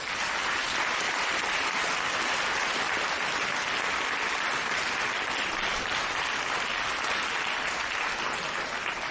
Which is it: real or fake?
real